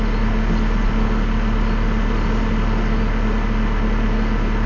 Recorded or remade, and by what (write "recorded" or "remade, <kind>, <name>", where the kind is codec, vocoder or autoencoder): recorded